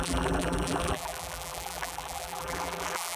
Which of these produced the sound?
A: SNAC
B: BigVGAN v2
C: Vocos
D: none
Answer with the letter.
B